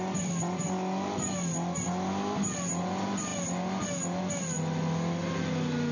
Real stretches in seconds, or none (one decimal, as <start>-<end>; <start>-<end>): 0.0-5.9